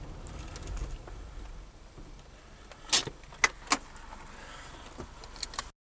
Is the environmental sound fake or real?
real